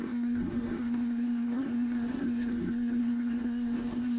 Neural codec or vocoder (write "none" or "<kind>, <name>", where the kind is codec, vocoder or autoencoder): codec, SNAC